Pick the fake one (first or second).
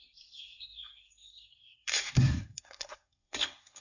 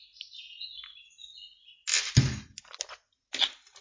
first